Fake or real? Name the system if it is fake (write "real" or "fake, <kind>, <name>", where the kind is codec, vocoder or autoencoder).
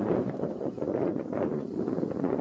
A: fake, vocoder, Vocos